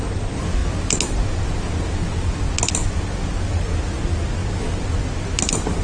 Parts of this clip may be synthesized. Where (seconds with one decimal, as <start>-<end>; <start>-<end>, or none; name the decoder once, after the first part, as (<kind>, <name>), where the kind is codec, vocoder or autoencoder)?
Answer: none